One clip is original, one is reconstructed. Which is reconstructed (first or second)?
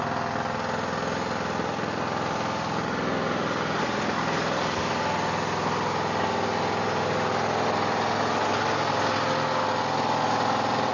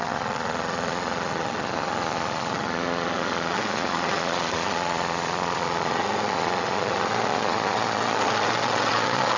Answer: second